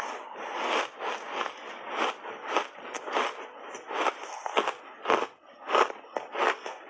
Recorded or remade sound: recorded